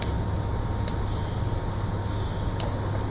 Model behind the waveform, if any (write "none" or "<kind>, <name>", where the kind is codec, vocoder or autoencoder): none